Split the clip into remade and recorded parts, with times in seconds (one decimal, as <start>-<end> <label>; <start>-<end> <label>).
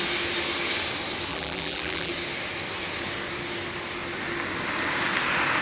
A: 0.0-1.3 recorded; 1.3-2.1 remade; 2.1-5.6 recorded